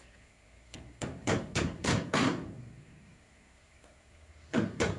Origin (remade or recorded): remade